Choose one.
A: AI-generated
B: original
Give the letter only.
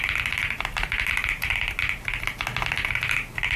B